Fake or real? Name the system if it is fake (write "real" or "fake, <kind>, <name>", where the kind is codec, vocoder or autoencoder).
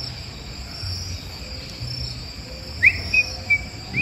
real